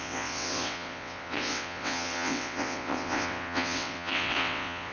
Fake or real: fake